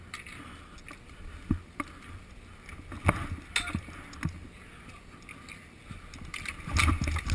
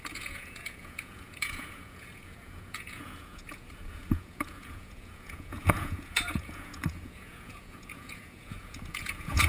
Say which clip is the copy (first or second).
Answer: second